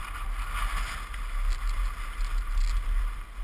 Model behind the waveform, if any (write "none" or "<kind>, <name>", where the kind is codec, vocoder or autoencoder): none